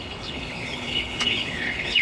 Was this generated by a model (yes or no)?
yes